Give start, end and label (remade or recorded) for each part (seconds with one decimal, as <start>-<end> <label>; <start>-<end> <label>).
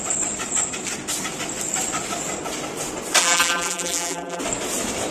0.0-3.2 recorded; 3.2-4.4 remade; 4.4-5.1 recorded